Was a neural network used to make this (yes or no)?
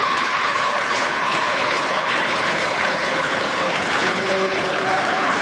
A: yes